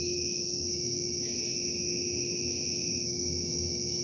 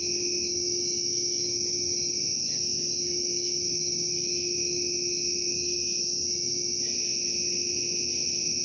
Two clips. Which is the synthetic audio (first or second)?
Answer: first